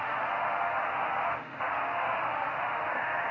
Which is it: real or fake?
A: fake